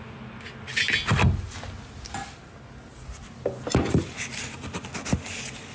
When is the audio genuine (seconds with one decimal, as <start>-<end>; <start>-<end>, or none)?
0.0-5.7